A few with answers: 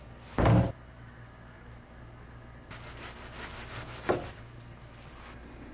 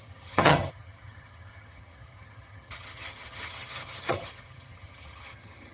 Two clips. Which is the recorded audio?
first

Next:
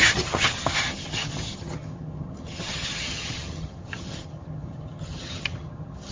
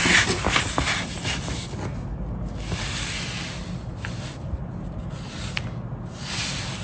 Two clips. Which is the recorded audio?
second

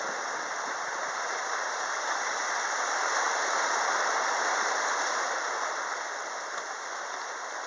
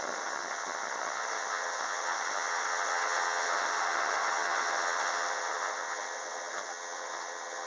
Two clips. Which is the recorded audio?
first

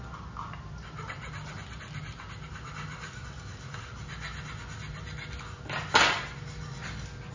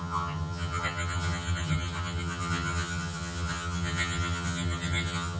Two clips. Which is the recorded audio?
first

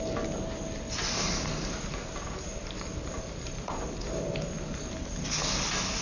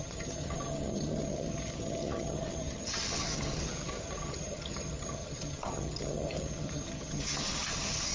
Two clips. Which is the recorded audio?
first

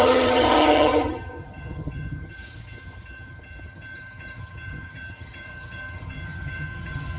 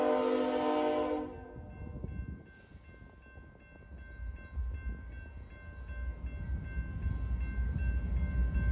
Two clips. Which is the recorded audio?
second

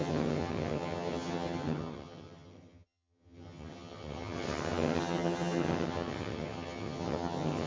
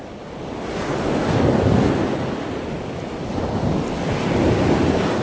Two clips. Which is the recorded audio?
second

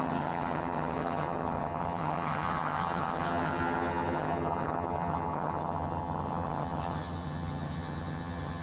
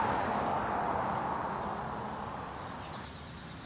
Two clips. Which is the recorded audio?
second